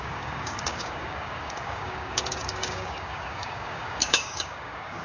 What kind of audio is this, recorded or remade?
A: remade